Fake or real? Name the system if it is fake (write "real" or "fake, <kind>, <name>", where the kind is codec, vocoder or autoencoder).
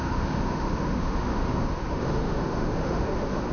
fake, autoencoder, DAC-VAE